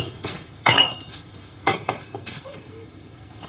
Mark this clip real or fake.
fake